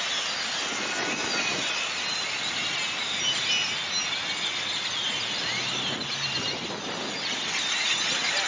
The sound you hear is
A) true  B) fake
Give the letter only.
A